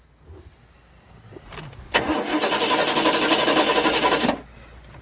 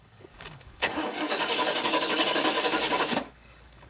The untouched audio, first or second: first